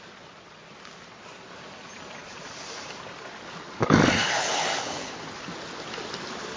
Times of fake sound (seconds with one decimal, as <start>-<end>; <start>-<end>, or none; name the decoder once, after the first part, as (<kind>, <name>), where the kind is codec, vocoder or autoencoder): 4.3-5.2 (codec, HILCodec)